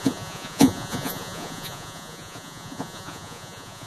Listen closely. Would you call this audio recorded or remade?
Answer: remade